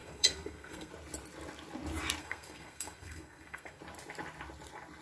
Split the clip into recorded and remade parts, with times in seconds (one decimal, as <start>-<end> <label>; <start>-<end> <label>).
0.0-0.9 remade; 0.9-2.2 recorded; 2.2-3.8 remade; 3.8-5.0 recorded